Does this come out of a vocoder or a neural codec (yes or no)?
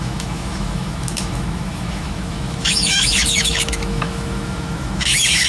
yes